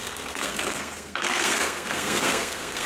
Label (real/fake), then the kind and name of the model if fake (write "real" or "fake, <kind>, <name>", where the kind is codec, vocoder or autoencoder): fake, codec, SNAC